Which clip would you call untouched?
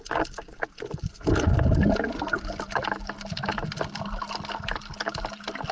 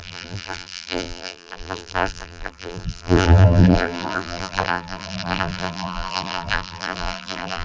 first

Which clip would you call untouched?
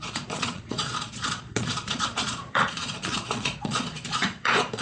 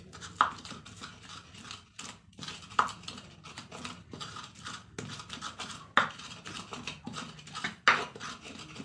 second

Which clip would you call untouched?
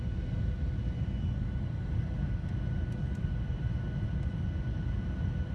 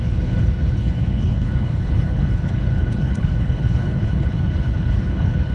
first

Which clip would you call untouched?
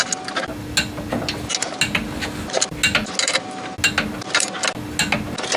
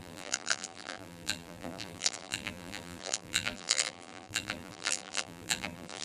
first